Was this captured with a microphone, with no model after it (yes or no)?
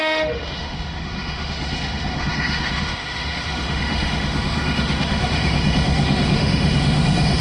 no